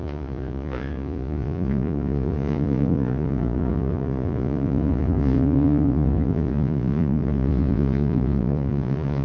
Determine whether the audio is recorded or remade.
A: remade